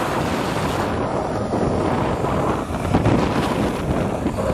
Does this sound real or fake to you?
real